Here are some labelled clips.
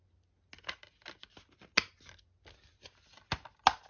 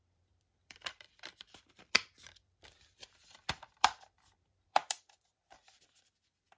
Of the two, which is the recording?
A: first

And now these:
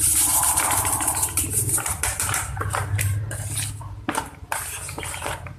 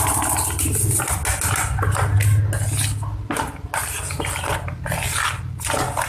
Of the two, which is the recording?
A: second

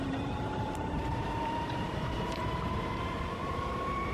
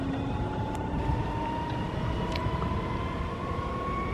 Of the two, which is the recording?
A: second